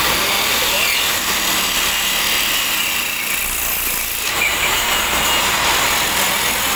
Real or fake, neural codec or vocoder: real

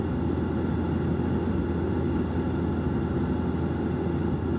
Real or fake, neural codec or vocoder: real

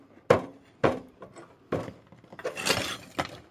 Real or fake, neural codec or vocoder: real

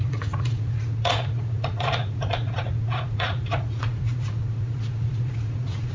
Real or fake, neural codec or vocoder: fake, vocoder, Vocos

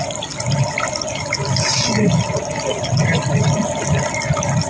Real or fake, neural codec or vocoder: real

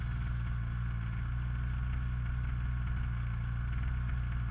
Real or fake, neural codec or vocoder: real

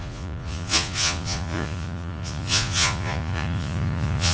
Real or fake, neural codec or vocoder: fake, vocoder, Vocos